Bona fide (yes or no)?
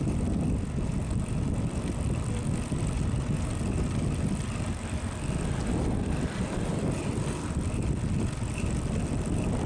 yes